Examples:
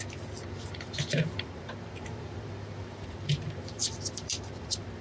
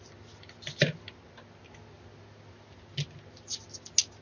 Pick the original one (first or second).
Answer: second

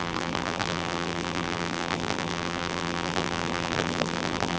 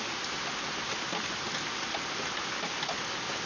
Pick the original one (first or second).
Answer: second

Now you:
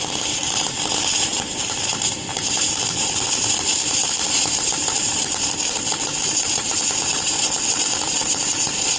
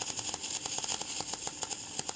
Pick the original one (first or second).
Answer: second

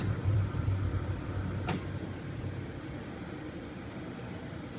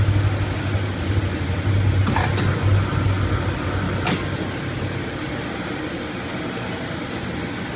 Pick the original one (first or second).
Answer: second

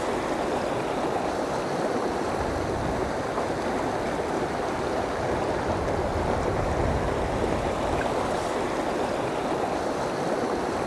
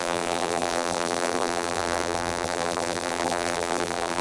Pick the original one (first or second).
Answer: first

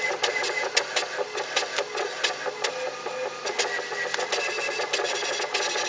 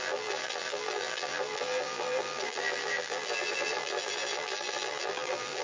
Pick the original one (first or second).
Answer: first